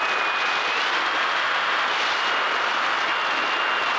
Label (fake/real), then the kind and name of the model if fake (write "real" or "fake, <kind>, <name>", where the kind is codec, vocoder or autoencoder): real